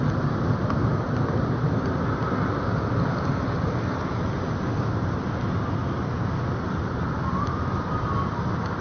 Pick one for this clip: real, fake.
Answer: real